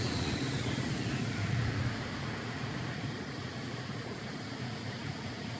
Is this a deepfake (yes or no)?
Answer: yes